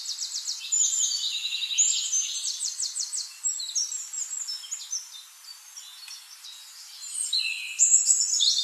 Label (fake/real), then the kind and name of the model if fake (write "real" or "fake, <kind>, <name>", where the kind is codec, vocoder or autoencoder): real